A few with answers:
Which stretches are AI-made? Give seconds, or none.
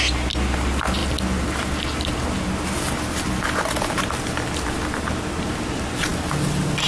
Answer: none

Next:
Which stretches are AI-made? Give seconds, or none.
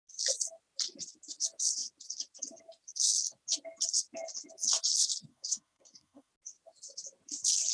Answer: 5.3-6.3 (codec, SNAC)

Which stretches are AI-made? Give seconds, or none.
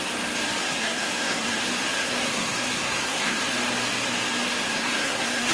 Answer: 0.6-1.6 (codec, SNAC); 2.0-3.4; 4.7-5.5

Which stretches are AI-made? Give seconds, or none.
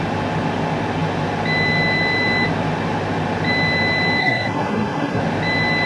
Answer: 4.2-5.2 (codec, SNAC)